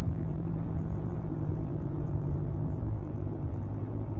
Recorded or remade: remade